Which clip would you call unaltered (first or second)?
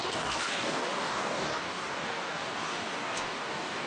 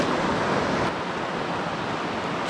second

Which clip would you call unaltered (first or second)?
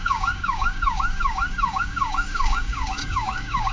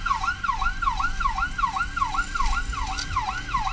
second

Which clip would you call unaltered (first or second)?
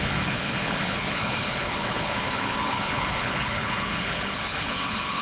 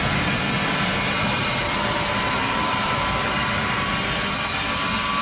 second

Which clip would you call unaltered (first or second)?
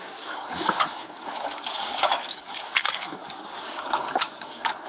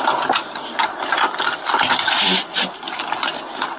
second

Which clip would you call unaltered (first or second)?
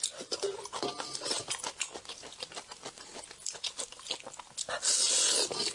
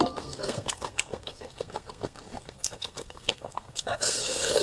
first